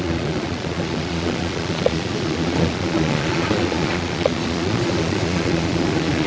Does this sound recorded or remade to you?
remade